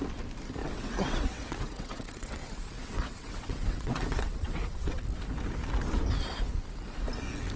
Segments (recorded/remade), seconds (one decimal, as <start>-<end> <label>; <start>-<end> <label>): 0.0-0.6 recorded; 0.6-5.0 remade; 5.0-7.6 recorded